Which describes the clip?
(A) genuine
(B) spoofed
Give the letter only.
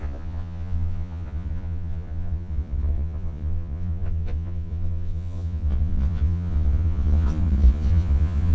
B